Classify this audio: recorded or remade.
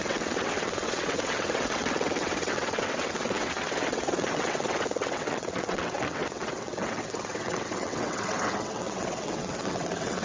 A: remade